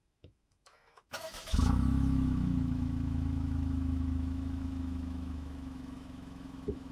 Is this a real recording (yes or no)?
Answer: no